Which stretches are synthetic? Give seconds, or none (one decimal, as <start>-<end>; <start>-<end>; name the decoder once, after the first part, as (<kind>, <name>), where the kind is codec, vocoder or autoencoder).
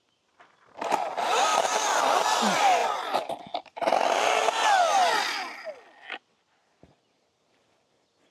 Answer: none